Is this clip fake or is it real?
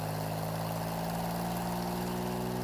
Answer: real